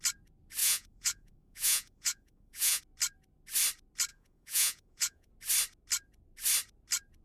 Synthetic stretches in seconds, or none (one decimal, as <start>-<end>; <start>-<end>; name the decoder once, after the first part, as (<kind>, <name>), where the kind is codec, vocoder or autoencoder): 0.6-2.8 (vocoder, Vocos); 4.1-5.3